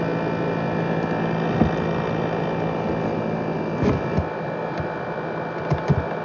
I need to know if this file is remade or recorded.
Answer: recorded